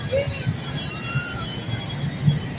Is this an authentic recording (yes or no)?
yes